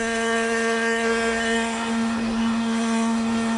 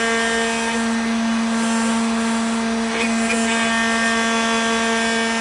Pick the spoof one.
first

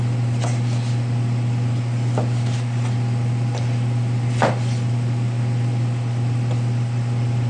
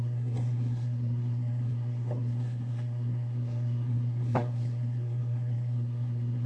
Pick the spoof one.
second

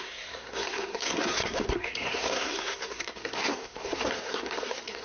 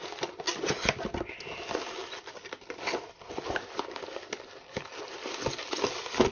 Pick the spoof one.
first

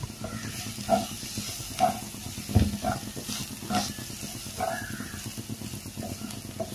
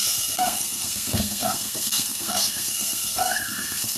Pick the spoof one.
second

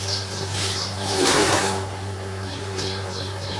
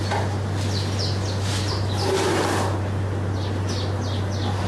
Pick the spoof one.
first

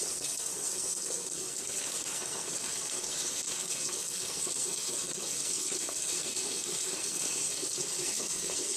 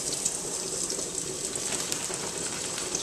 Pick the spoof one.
first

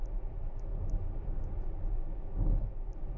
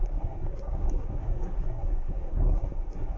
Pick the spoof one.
second